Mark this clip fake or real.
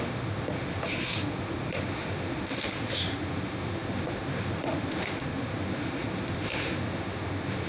fake